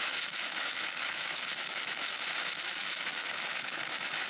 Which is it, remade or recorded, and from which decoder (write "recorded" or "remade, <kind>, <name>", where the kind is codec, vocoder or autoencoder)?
remade, autoencoder, DAC-VAE